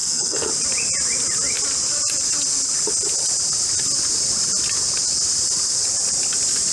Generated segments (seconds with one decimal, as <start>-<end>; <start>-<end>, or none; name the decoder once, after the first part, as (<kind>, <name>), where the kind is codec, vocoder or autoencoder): 0.0-0.5 (codec, SNAC)